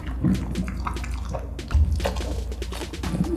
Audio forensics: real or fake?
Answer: real